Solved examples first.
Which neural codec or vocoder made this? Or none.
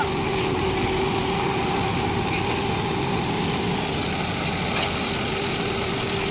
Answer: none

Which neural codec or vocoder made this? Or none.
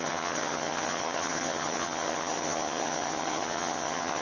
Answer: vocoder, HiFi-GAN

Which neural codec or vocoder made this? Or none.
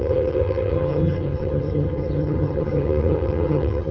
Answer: vocoder, HiFi-GAN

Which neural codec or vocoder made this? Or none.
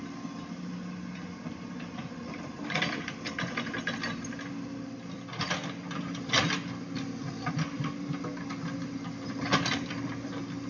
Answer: none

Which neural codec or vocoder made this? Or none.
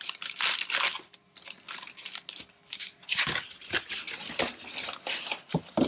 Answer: none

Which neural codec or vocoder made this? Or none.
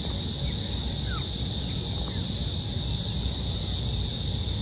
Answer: none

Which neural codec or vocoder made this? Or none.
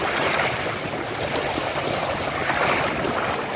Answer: none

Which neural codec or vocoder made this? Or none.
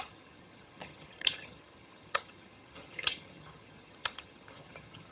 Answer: vocoder, HiFi-GAN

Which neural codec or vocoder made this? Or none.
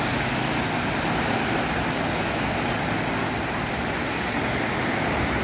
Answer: none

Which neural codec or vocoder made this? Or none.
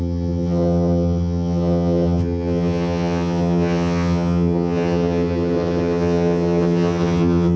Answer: vocoder, HiFi-GAN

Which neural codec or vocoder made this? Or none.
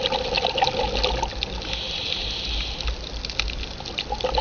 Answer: none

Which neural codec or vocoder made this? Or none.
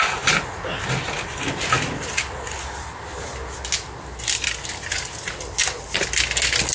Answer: none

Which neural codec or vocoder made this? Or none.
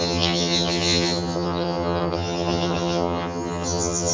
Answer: vocoder, HiFi-GAN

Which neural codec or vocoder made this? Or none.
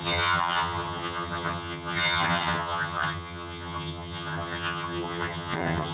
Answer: vocoder, HiFi-GAN